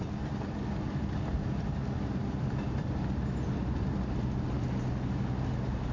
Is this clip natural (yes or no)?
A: yes